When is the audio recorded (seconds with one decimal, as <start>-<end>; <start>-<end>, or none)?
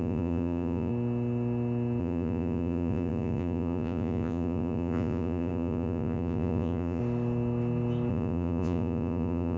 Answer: 0.9-2.0; 7.0-8.1